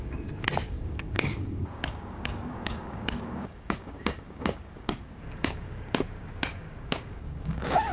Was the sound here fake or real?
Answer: fake